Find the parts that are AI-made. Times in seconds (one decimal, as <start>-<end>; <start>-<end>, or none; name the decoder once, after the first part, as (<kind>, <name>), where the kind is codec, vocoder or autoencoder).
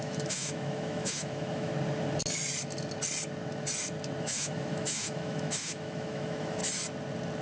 0.0-1.7 (autoencoder, DAC-VAE); 4.2-6.6